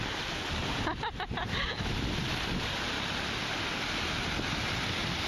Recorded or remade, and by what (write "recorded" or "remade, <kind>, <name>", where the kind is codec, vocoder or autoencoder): recorded